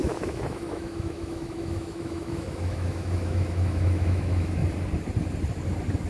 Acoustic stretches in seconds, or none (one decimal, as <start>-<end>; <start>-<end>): 4.6-6.1